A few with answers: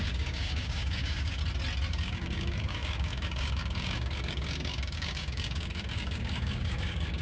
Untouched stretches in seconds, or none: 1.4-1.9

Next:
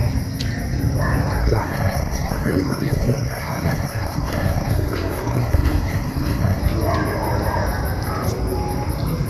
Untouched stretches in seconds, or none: 0.0-1.4; 6.6-9.3

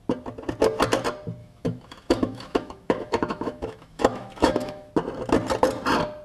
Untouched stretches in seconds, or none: 0.0-1.4; 4.9-6.2

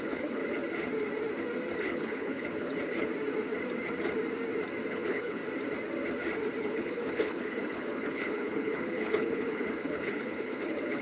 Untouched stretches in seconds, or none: 0.4-1.8; 3.1-4.9; 5.4-6.6

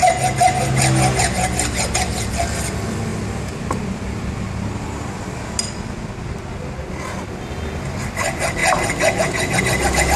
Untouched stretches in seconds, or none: 0.0-10.2

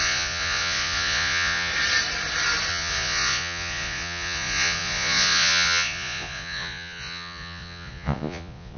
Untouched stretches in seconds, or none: 1.7-2.7